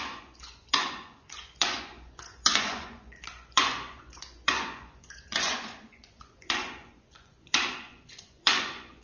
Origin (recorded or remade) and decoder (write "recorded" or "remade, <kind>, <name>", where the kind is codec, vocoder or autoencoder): remade, vocoder, Vocos